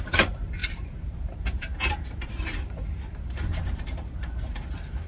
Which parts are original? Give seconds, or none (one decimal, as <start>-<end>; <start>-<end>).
none